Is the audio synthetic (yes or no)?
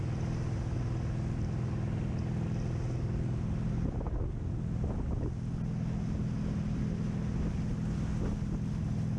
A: no